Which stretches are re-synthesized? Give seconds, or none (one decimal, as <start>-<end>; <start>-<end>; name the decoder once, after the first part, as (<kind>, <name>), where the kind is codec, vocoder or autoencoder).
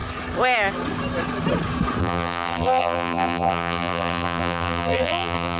2.0-5.6 (vocoder, BigVGAN v2)